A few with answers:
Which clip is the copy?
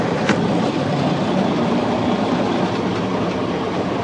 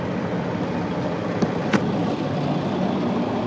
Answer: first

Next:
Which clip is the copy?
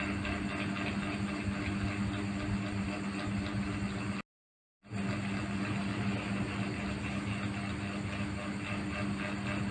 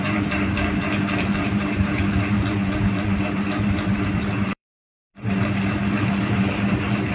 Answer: second